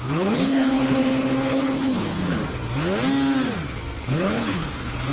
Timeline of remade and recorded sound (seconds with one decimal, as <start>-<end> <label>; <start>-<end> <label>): 0.0-2.4 remade; 2.4-4.0 recorded; 4.0-5.1 remade